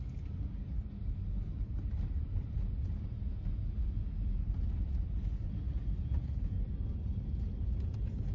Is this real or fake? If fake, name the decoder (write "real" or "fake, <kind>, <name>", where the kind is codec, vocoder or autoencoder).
real